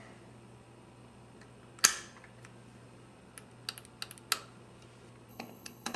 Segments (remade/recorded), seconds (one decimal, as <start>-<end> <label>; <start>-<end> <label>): 0.0-5.3 recorded; 5.3-6.0 remade